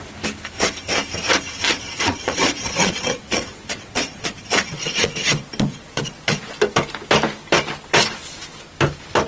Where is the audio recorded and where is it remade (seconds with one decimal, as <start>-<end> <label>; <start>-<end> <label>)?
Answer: 0.0-1.7 recorded; 1.7-6.5 remade; 6.5-9.3 recorded